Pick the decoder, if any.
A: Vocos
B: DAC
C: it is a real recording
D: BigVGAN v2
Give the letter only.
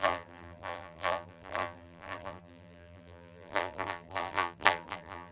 D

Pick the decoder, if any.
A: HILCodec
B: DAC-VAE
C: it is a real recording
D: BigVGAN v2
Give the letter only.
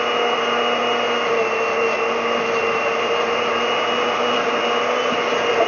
C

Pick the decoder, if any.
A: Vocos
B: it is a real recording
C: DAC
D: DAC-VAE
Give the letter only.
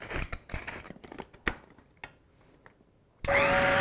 B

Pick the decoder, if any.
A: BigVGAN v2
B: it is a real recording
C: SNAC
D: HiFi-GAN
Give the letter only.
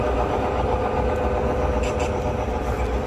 B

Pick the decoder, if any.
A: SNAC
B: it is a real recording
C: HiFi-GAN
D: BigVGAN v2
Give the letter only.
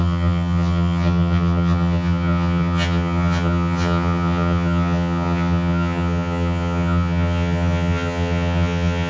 C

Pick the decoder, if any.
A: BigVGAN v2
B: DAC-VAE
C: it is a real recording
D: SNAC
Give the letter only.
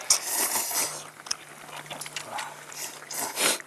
C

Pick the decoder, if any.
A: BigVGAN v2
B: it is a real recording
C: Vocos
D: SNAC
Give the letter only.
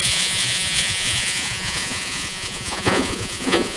C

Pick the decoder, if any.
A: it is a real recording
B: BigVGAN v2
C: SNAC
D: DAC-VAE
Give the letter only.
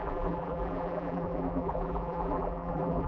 B